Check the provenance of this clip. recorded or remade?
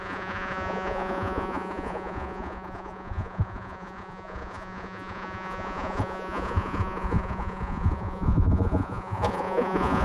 remade